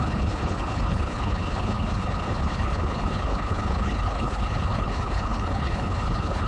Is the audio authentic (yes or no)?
no